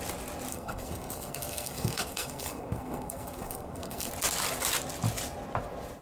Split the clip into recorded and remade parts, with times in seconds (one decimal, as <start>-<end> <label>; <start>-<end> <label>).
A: 0.0-0.5 recorded; 0.5-4.1 remade; 4.1-6.0 recorded